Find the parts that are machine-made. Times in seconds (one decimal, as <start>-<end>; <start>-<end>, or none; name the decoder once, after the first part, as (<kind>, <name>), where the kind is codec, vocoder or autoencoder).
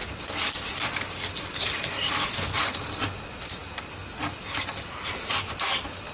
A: none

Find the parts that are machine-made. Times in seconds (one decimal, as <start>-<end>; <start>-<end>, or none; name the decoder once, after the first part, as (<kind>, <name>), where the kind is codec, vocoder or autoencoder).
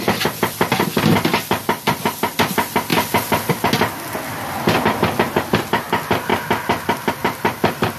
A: 0.0-2.9 (vocoder, BigVGAN v2); 3.5-6.3; 7.1-8.0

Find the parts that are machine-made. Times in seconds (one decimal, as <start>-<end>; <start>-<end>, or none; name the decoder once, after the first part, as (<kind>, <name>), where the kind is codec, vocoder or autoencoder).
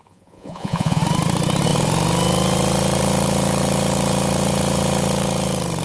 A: 0.0-1.0 (vocoder, Vocos)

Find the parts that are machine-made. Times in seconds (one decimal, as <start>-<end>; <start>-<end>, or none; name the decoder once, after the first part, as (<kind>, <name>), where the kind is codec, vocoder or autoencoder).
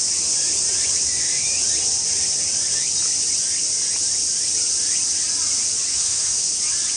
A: 5.9-6.6 (autoencoder, DAC-VAE)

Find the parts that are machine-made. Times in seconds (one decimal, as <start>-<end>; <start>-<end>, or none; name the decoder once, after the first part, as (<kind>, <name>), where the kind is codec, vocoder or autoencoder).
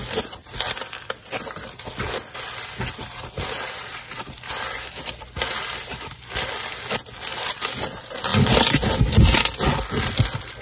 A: none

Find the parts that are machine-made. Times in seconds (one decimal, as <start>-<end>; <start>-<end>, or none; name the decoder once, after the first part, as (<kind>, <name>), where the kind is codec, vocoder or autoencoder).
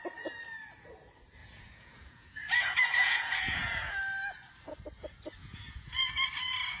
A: 1.4-3.9 (vocoder, Vocos); 5.4-6.1